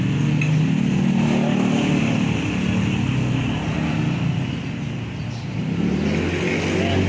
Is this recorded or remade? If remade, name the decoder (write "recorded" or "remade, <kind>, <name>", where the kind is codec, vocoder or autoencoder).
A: recorded